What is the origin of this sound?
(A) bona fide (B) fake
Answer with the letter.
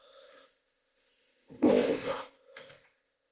B